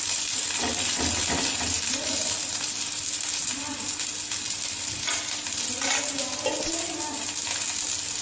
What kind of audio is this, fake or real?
real